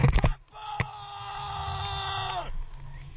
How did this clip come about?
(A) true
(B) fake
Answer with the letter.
A